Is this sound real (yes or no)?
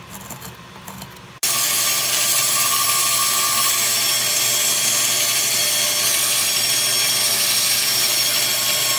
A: yes